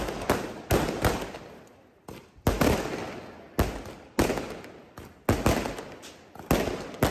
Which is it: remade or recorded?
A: recorded